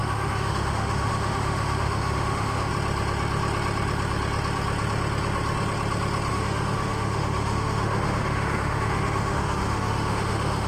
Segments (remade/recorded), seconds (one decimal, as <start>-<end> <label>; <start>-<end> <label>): 0.0-2.7 remade; 2.7-6.3 recorded; 6.3-10.7 remade

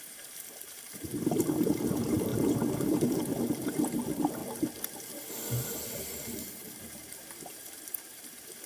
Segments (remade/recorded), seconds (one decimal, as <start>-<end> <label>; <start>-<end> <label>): 0.0-4.4 remade; 4.4-5.7 recorded; 5.7-8.7 remade

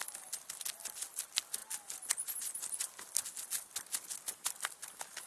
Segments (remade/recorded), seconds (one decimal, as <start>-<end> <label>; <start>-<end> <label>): 0.0-5.3 recorded

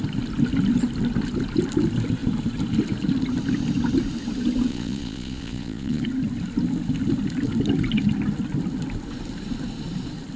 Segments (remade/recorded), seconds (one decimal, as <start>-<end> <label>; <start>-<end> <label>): 0.0-4.7 recorded; 4.7-6.0 remade; 6.0-10.4 recorded

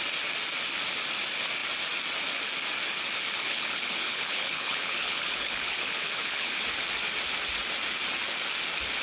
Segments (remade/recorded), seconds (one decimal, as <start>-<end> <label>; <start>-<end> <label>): 0.0-3.4 recorded; 3.4-6.5 remade; 6.5-9.0 recorded

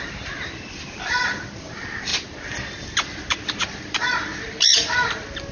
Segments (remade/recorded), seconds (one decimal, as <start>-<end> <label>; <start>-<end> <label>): 0.0-5.5 recorded

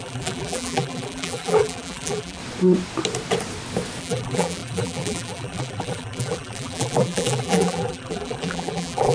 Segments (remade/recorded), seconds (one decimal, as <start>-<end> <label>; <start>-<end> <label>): 0.0-2.4 remade; 2.4-4.0 recorded; 4.0-9.1 remade